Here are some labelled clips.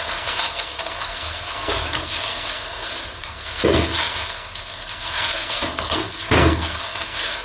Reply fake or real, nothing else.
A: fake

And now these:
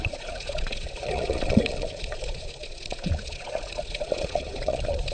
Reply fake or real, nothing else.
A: fake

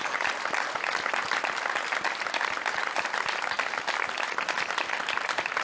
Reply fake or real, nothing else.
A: real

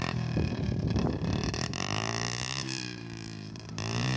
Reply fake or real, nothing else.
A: fake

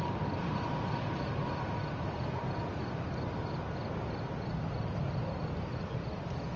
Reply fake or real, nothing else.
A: real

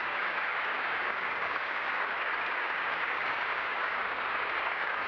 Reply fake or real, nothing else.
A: fake